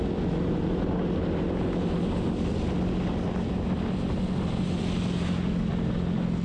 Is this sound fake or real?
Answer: real